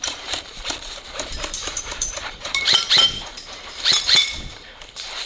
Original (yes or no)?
no